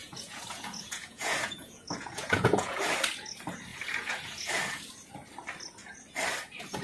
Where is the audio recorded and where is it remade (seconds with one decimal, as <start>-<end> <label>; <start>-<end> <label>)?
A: 0.0-2.8 remade; 2.8-3.7 recorded; 3.7-4.5 remade; 4.5-6.8 recorded